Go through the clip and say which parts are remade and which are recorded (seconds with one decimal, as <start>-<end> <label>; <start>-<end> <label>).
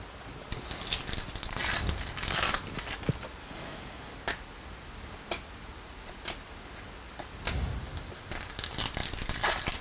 0.0-3.4 recorded; 3.4-4.1 remade; 4.1-9.8 recorded